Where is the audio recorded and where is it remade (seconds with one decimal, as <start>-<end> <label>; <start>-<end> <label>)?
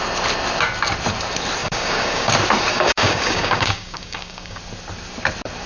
0.0-1.6 recorded; 1.6-2.3 remade; 2.3-2.7 recorded; 2.7-4.6 remade; 4.6-5.7 recorded